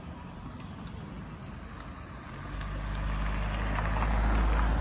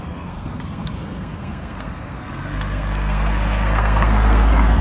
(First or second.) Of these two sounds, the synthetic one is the second